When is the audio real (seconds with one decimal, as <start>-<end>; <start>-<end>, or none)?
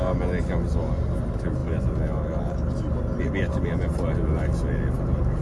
0.0-5.4